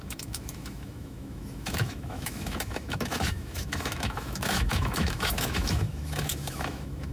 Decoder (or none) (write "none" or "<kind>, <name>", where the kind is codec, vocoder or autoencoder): autoencoder, DAC-VAE